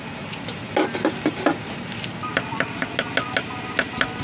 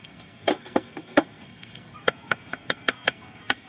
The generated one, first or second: second